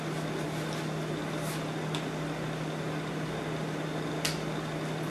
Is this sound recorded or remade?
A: recorded